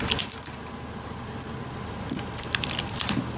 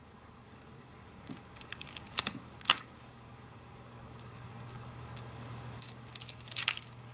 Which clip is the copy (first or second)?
second